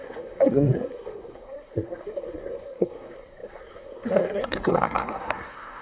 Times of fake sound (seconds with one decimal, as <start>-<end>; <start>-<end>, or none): 0.0-5.8